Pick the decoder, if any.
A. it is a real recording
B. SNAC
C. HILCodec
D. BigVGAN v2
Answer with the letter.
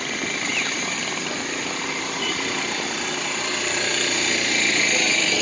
D